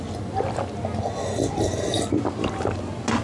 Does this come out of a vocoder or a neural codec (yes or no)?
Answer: no